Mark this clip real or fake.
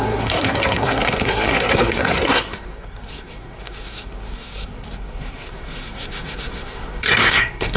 fake